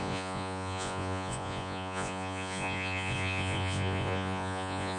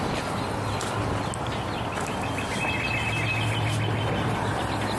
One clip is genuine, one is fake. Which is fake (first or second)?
first